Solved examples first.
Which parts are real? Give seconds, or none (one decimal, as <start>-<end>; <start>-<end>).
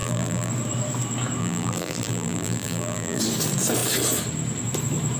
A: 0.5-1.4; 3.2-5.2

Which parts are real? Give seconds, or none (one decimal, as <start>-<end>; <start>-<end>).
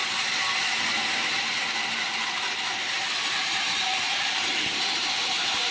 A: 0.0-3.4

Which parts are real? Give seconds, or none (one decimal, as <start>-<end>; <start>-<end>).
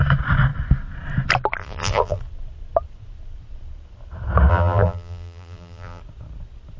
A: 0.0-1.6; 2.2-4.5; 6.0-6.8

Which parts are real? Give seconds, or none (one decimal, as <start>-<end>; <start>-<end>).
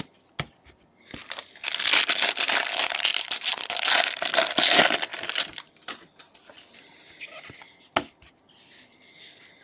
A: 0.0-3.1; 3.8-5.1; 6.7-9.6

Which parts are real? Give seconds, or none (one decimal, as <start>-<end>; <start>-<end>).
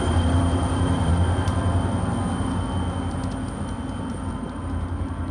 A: 1.1-4.3